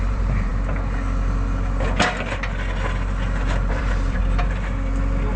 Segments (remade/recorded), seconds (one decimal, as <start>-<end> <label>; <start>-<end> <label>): 0.0-0.5 remade; 0.5-3.7 recorded; 3.7-4.2 remade; 4.2-5.4 recorded

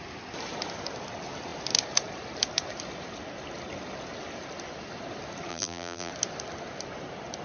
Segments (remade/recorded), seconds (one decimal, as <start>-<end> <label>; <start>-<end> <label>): 0.0-5.5 recorded; 5.5-6.1 remade; 6.1-7.4 recorded

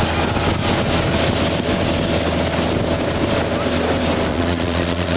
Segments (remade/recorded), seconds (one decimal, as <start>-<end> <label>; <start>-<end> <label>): 0.0-4.3 recorded; 4.3-5.2 remade

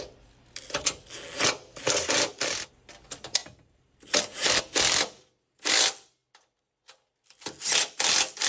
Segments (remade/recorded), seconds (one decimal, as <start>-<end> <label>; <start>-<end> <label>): 0.0-3.4 recorded; 3.4-4.6 remade; 4.6-8.5 recorded

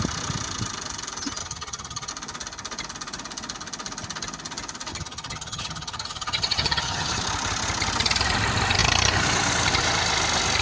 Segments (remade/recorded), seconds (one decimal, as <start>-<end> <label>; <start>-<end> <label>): 0.0-1.4 recorded; 1.4-2.1 remade; 2.1-4.9 recorded; 4.9-7.2 remade; 7.2-10.6 recorded

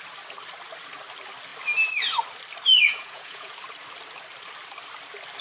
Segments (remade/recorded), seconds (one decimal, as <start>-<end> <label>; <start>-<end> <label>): 0.0-2.7 recorded; 2.7-3.5 remade; 3.5-5.4 recorded